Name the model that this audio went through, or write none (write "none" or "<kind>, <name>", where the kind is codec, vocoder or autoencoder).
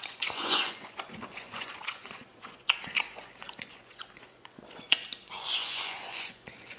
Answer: vocoder, Vocos